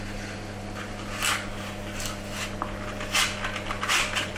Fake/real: real